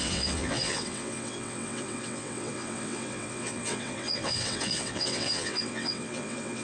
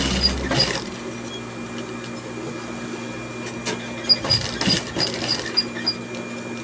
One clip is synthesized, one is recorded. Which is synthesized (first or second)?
first